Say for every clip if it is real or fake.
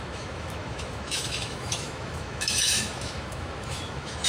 fake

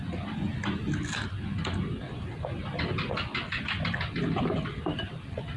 real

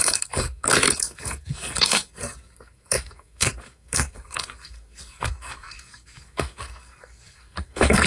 fake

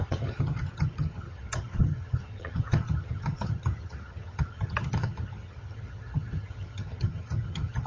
fake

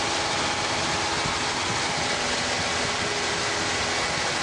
real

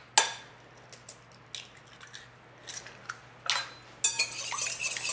real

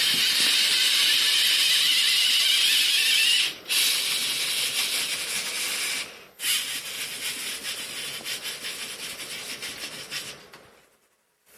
real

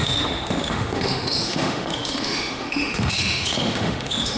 fake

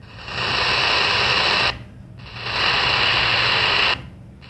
real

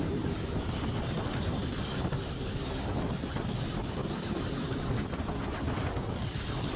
fake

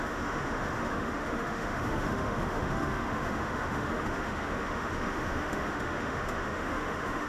fake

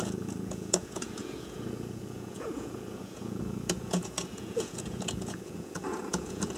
fake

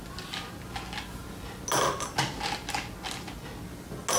real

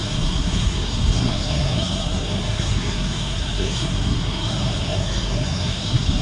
fake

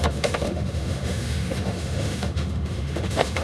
fake